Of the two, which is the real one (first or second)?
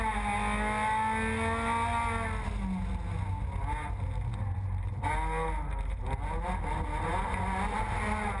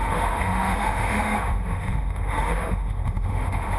first